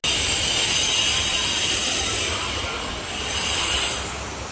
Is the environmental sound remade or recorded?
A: recorded